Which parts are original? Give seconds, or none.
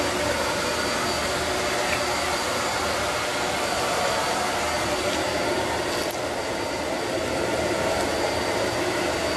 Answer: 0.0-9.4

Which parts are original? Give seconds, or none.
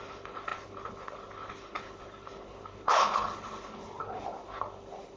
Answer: none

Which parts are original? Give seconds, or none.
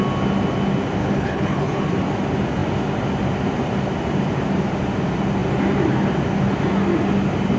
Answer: 0.0-1.0; 1.9-7.6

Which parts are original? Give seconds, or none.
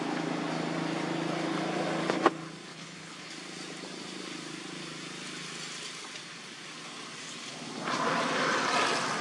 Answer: 0.0-2.7; 3.3-9.2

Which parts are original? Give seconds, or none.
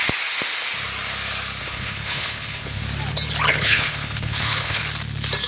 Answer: 0.0-1.6; 2.8-3.5; 4.8-5.5